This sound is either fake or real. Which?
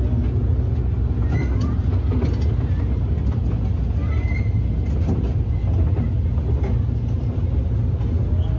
real